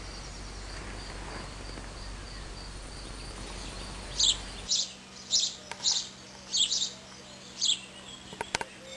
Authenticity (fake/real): real